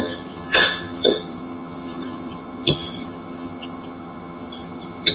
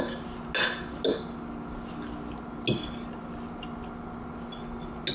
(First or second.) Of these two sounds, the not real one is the first